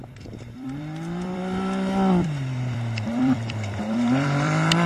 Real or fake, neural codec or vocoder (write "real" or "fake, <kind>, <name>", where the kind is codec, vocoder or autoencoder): fake, vocoder, BigVGAN v2